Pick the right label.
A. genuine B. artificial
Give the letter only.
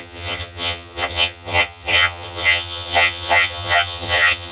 B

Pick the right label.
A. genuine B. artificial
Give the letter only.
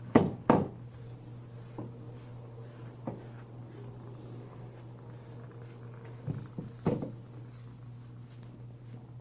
A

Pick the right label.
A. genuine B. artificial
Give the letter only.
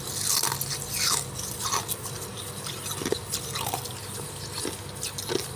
A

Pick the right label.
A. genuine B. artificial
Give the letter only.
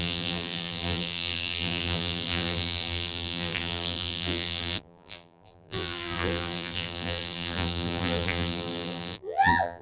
B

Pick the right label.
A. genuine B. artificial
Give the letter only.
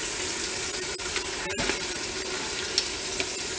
A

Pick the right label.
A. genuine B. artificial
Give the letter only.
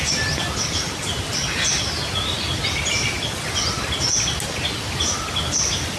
A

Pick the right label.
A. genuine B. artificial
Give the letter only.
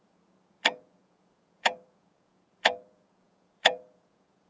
B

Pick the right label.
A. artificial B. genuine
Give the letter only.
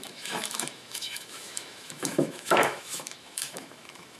A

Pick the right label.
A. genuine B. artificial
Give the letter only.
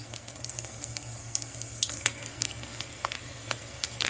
B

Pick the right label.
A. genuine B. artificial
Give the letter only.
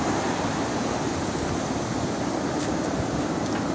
A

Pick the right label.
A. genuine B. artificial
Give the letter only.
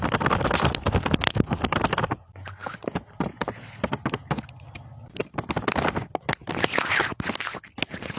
A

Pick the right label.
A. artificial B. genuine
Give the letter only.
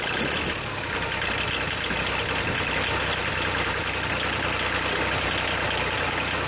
B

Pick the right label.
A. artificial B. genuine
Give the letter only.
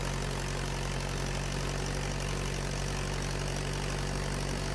B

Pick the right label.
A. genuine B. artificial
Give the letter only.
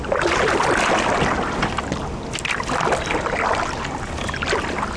A